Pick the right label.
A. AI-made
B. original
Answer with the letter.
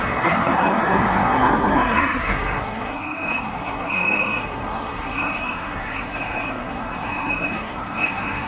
A